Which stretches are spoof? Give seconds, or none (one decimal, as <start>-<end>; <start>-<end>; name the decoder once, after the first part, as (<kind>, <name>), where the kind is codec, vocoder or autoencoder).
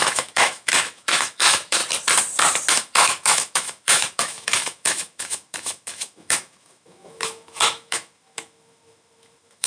0.0-1.8 (autoencoder, DAC-VAE); 2.7-9.7